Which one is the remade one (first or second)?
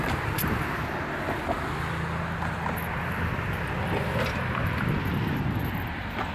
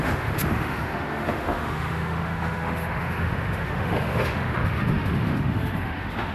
second